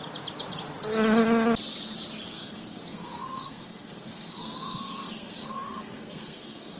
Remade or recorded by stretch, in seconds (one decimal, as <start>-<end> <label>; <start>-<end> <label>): 0.0-2.3 recorded; 2.3-6.8 remade